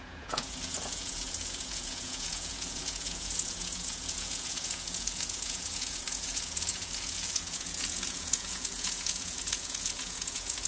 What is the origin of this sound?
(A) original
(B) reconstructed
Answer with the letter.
B